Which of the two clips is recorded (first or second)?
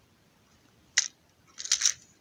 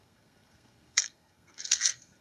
first